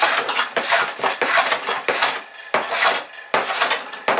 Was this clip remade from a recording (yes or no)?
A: no